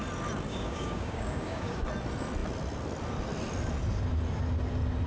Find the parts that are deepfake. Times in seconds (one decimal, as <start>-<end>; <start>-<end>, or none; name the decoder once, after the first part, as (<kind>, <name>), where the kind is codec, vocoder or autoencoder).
0.5-1.8 (codec, DAC)